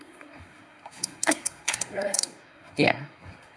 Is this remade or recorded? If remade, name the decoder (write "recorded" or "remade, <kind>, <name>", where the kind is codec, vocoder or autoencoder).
remade, codec, SNAC